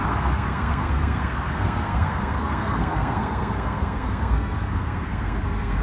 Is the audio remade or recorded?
remade